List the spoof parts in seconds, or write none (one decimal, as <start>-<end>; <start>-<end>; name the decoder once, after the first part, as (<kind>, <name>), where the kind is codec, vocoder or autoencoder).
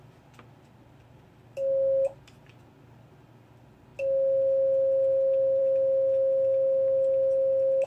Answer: none